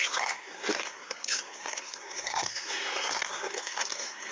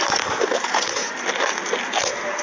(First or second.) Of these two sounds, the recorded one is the second